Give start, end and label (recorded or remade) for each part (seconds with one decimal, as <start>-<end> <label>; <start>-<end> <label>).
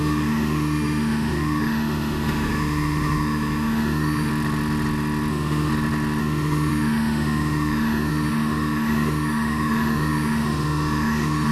0.0-4.3 remade; 4.3-5.3 recorded; 5.3-5.7 remade; 5.7-6.2 recorded; 6.2-11.5 remade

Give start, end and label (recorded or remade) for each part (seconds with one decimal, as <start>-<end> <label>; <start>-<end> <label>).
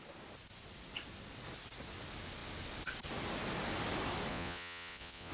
0.0-4.3 recorded; 4.3-5.3 remade